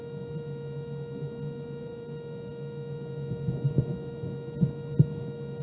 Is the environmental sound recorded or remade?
recorded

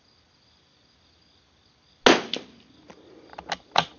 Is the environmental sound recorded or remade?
recorded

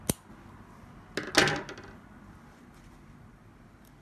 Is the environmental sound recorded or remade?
recorded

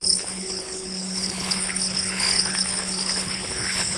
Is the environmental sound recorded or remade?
remade